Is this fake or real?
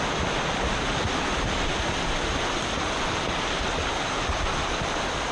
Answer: real